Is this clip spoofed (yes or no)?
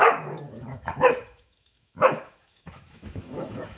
yes